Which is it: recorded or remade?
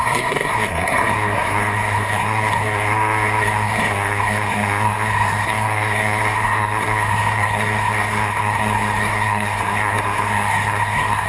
remade